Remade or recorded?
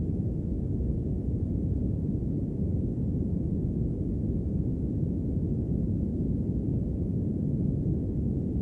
recorded